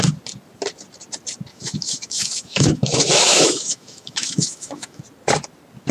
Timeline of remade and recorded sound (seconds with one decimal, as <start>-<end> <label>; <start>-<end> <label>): 0.0-1.5 recorded; 1.5-5.0 remade; 5.0-5.9 recorded